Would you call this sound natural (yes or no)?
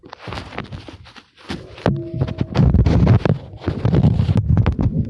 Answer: yes